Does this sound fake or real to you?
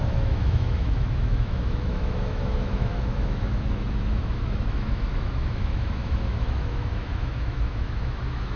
fake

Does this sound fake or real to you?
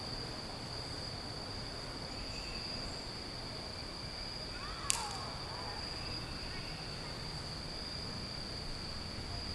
real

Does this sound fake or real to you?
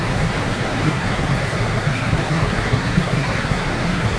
fake